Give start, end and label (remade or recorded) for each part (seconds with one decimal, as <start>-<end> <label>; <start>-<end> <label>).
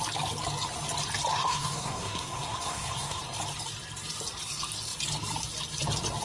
0.0-1.3 recorded; 1.3-3.2 remade; 3.2-6.2 recorded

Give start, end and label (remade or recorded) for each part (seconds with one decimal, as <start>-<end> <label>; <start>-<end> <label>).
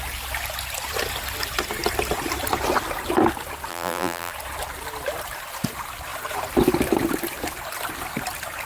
0.0-3.7 recorded; 3.7-4.3 remade; 4.3-8.7 recorded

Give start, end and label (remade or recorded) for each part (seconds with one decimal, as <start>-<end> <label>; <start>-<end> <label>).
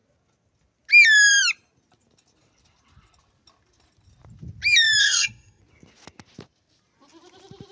0.0-5.0 recorded; 5.0-5.6 remade; 5.6-7.7 recorded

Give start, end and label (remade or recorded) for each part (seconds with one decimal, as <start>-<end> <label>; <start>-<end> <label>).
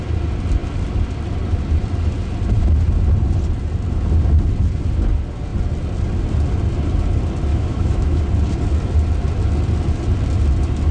0.0-7.5 recorded; 7.5-8.2 remade; 8.2-10.9 recorded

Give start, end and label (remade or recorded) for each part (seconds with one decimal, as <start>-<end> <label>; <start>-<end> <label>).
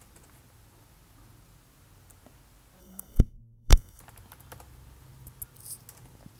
0.0-2.8 recorded; 2.8-4.0 remade; 4.0-6.4 recorded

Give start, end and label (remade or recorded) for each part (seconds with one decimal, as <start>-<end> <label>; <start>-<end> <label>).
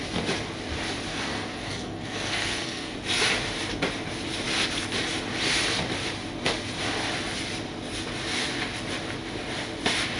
0.0-1.1 recorded; 1.1-2.9 remade; 2.9-10.2 recorded